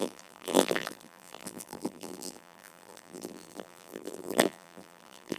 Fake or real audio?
fake